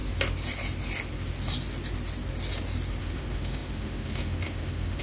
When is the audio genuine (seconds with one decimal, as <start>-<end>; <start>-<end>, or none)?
0.0-3.0